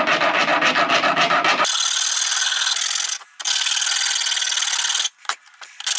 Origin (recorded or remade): recorded